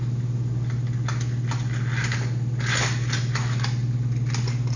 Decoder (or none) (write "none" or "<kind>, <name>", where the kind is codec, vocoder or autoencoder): none